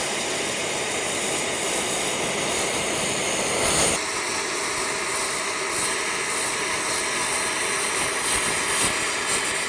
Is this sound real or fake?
real